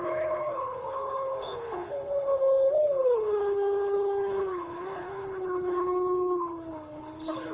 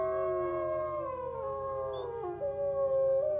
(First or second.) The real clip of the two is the second